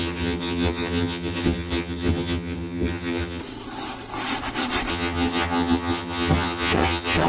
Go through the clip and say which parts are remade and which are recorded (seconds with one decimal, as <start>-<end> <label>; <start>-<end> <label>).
0.0-3.4 remade; 3.4-4.9 recorded; 4.9-7.3 remade